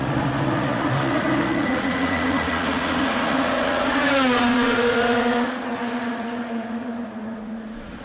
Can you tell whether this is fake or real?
fake